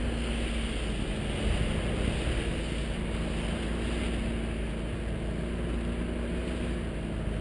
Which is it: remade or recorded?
recorded